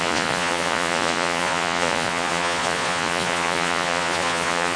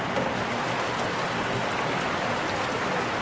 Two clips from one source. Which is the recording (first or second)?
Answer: second